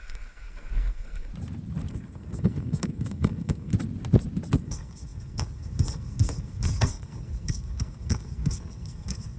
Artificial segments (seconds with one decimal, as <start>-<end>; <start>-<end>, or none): 0.0-1.3; 1.9-3.7; 4.6-9.4